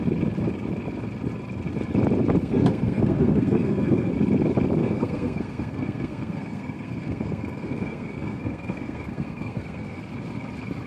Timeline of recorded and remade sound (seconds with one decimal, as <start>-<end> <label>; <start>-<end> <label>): 0.0-2.4 recorded; 2.4-4.1 remade; 4.1-4.8 recorded; 4.8-10.0 remade; 10.0-10.9 recorded

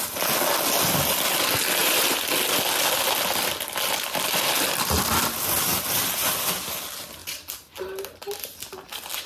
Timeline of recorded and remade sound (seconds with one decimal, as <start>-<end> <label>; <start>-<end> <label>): 0.0-1.8 recorded; 1.8-2.3 remade; 2.3-9.3 recorded

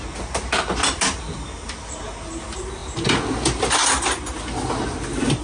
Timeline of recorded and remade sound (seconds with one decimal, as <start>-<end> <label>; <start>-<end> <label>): 0.0-5.4 recorded

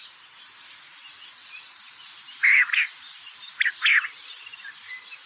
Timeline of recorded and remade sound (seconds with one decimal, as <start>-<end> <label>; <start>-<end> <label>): 0.0-5.3 recorded

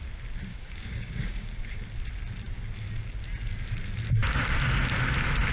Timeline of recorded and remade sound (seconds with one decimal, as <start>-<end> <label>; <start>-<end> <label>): 0.0-0.5 recorded; 0.5-1.8 remade; 1.8-5.5 recorded

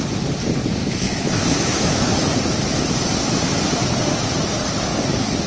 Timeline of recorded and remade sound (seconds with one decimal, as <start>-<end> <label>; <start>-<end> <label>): 0.0-0.8 recorded; 0.8-2.3 remade; 2.3-5.5 recorded

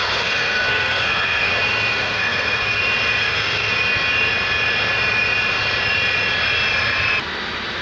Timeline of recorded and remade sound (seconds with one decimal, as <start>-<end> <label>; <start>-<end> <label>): 0.0-1.5 remade; 1.5-1.9 recorded; 1.9-2.8 remade; 2.8-3.2 recorded; 3.2-3.7 remade; 3.7-7.8 recorded

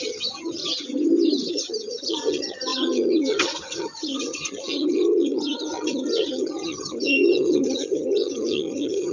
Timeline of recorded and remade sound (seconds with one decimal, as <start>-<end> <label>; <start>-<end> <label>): 0.0-0.6 remade; 0.6-1.5 recorded; 1.5-9.1 remade